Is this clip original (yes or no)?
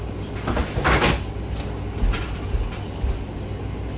yes